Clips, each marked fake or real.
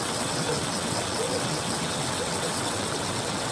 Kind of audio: fake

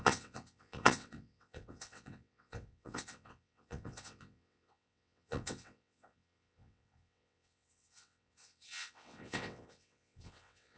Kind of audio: fake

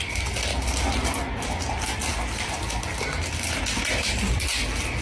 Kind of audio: real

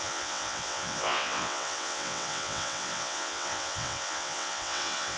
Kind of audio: fake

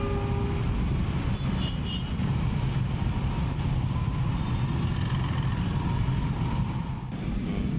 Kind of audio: real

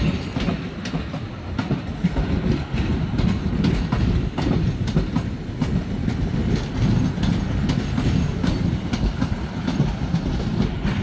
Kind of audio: real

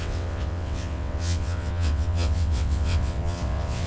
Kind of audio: fake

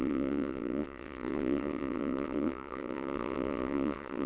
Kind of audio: fake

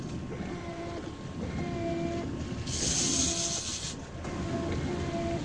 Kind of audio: real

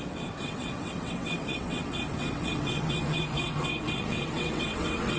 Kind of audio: fake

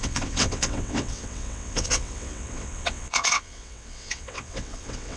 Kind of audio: fake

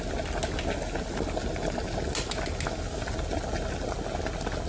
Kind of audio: real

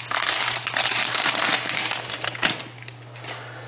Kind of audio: real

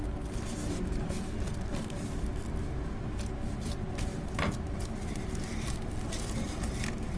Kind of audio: real